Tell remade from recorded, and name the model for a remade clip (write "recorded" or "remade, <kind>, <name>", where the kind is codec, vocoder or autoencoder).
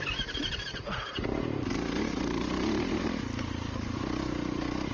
recorded